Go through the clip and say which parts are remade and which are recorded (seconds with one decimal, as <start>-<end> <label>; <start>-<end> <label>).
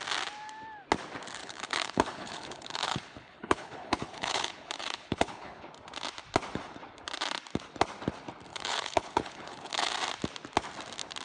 0.0-1.4 recorded; 1.4-5.6 remade; 5.6-8.5 recorded; 8.5-9.9 remade; 9.9-11.2 recorded